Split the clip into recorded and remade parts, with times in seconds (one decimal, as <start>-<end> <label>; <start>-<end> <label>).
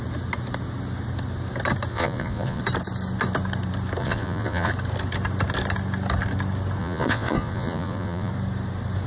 0.0-1.9 recorded; 1.9-2.6 remade; 2.6-4.0 recorded; 4.0-4.7 remade; 4.7-6.8 recorded; 6.8-8.3 remade; 8.3-9.1 recorded